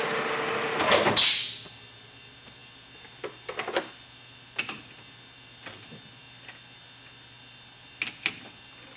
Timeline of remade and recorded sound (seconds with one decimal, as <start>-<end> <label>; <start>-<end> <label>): 0.0-9.0 recorded